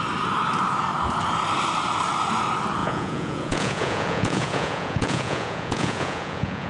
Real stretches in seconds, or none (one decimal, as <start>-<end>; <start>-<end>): 0.0-2.8